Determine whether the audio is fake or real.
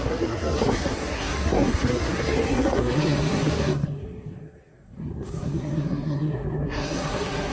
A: fake